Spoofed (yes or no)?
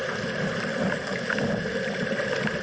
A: no